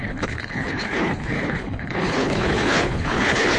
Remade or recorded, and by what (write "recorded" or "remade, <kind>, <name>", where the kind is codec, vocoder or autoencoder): remade, codec, HILCodec